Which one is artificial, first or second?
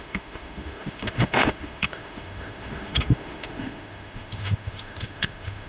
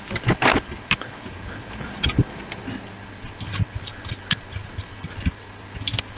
first